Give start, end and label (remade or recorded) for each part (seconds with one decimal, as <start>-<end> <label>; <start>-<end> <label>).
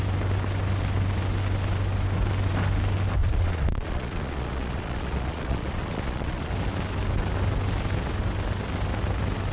0.0-3.2 recorded; 3.2-6.5 remade; 6.5-9.5 recorded